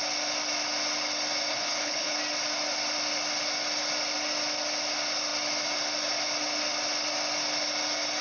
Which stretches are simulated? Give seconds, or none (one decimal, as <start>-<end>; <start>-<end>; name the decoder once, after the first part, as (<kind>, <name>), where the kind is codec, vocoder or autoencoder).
1.5-2.2 (codec, HILCodec)